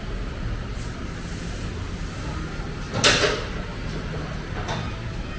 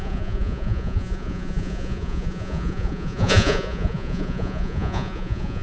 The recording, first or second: first